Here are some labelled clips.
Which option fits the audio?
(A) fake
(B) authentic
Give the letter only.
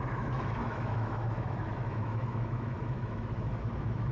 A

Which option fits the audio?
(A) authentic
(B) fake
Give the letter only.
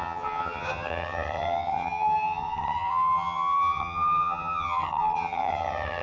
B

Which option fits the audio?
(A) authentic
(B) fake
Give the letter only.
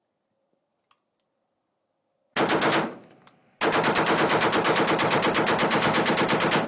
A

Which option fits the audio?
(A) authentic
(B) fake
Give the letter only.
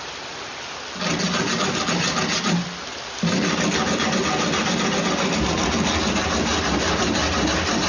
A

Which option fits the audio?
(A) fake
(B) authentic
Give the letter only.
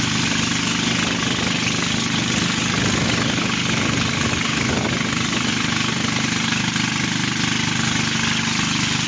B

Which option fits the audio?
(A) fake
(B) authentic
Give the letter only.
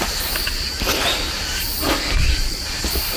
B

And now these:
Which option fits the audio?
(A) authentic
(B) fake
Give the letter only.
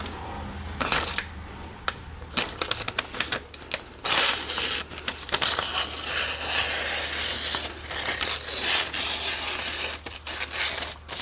A